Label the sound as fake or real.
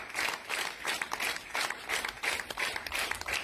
fake